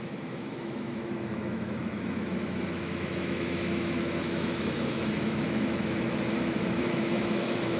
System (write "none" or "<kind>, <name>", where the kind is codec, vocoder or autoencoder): autoencoder, DAC-VAE